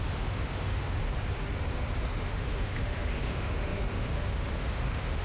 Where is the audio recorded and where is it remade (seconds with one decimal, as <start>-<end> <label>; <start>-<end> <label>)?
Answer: 0.0-1.0 remade; 1.0-2.1 recorded; 2.1-5.2 remade